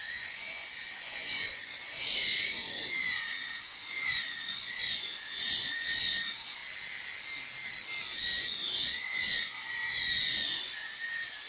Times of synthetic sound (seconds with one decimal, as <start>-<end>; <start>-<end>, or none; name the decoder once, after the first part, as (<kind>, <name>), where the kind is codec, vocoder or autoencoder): 0.0-6.6 (vocoder, Vocos); 8.2-11.5